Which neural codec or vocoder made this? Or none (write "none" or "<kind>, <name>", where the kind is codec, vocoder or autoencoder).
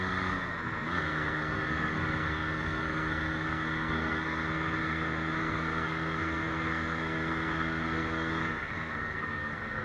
codec, SNAC